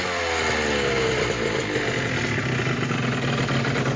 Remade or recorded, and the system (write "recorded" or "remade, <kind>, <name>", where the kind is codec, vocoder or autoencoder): recorded